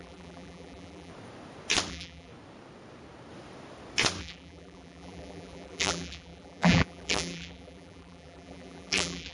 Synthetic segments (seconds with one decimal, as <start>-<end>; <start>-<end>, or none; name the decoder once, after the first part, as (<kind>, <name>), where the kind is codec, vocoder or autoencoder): 0.0-1.1 (vocoder, BigVGAN v2); 1.9-2.3; 4.2-9.3